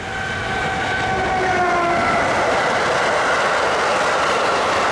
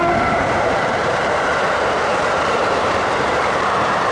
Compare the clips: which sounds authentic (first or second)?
first